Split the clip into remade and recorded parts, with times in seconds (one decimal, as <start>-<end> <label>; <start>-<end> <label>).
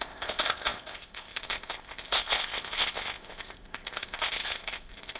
0.0-5.2 remade